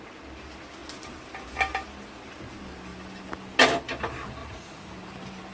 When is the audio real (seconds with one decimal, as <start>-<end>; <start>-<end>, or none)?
0.0-4.4; 4.9-5.5